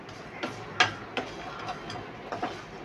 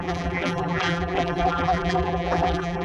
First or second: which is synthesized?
second